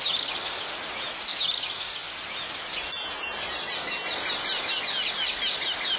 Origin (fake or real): real